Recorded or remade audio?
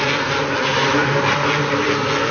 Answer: recorded